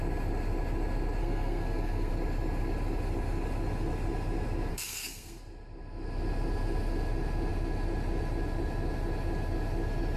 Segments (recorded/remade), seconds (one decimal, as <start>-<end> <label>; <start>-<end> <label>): 0.0-1.2 recorded; 1.2-2.1 remade; 2.1-4.7 recorded; 4.7-5.4 remade; 5.4-10.2 recorded